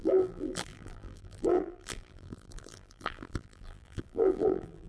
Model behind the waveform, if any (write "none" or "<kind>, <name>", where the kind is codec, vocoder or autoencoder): vocoder, BigVGAN v2